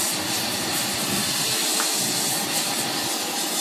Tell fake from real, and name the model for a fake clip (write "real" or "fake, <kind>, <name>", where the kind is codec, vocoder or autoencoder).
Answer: real